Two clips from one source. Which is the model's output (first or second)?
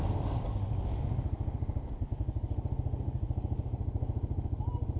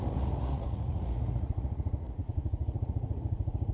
second